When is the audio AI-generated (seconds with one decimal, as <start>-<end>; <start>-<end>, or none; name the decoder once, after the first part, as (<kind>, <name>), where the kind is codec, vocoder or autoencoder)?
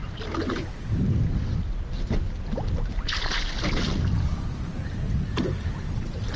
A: none